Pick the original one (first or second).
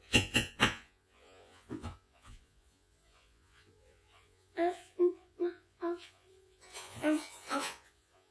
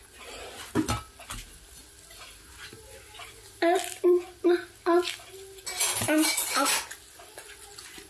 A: second